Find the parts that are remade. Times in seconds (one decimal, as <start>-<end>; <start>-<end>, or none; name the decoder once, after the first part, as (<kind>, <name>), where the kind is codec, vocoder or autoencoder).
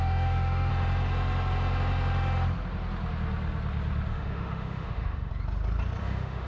0.0-0.7 (autoencoder, DAC-VAE); 4.1-5.3; 6.0-6.5